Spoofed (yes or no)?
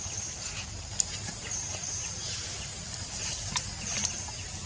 yes